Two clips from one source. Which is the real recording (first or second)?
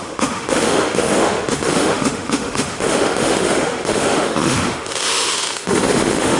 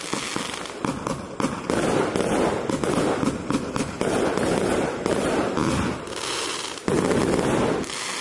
second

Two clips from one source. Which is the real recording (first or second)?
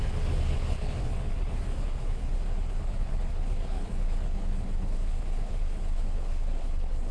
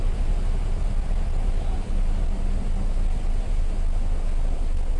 second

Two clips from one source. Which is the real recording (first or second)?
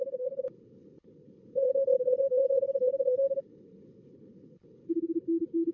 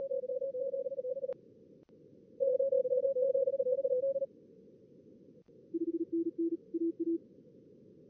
second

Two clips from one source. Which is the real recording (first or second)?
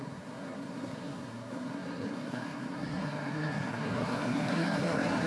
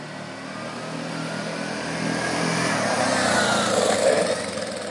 second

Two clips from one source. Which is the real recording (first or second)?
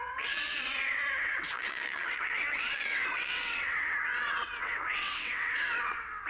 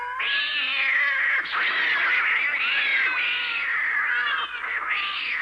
second